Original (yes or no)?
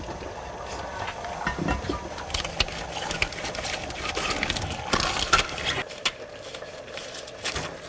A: yes